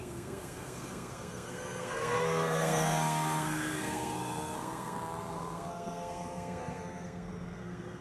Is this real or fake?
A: fake